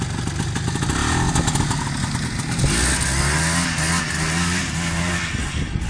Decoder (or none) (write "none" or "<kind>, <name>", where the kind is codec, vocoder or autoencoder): none